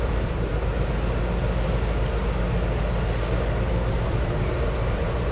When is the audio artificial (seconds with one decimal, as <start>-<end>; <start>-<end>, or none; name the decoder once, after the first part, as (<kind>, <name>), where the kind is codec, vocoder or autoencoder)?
0.0-0.5 (vocoder, BigVGAN v2); 3.7-5.3